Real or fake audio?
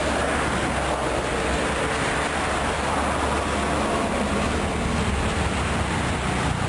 real